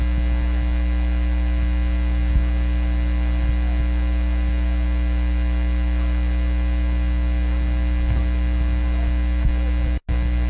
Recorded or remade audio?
recorded